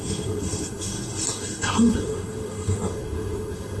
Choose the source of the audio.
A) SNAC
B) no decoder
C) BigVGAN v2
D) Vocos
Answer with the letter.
A